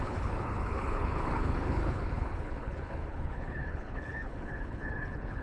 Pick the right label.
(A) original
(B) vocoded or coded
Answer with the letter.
B